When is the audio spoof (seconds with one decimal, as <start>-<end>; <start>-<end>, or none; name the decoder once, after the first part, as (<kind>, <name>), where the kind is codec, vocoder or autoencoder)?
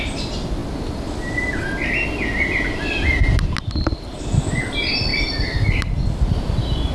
none